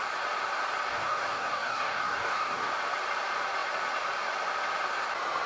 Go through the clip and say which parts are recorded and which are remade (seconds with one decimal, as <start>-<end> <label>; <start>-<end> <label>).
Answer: 0.0-0.9 recorded; 0.9-2.7 remade; 2.7-5.5 recorded